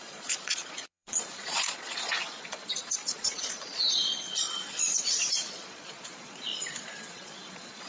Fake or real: fake